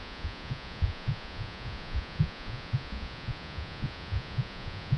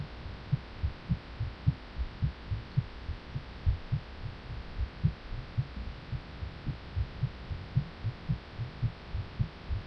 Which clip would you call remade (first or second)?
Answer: first